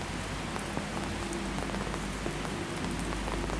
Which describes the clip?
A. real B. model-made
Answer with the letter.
A